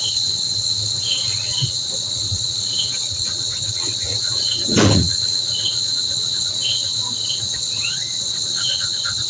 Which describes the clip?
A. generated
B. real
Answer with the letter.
A